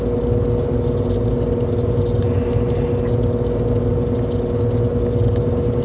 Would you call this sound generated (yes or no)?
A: no